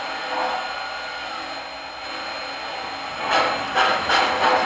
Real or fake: real